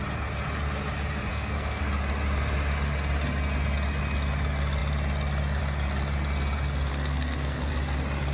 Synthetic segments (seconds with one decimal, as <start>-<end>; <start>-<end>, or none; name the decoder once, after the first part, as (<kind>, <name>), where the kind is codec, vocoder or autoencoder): 1.3-1.8 (codec, SNAC); 6.9-7.7